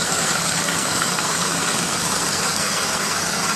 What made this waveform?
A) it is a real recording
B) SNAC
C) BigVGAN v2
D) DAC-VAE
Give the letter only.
B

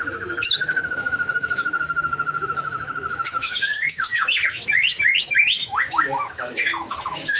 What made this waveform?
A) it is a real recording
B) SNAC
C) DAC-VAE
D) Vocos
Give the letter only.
C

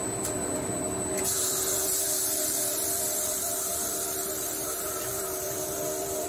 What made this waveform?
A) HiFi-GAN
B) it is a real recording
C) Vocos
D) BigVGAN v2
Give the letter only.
D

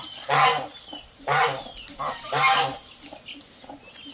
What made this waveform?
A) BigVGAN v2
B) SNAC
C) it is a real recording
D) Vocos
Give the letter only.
C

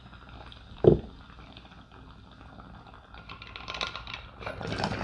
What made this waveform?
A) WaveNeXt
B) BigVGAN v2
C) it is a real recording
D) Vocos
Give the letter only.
C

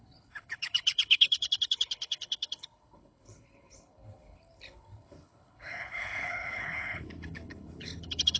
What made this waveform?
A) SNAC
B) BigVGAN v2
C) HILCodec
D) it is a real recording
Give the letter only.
C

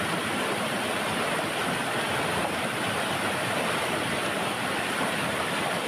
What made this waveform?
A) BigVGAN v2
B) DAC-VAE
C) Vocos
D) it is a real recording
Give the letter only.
D